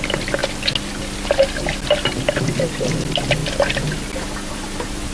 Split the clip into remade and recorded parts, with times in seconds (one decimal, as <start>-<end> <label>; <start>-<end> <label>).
0.0-5.1 recorded